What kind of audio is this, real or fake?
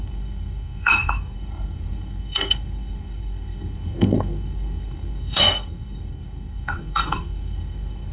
fake